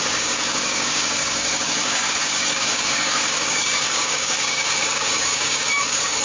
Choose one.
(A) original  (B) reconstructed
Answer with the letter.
B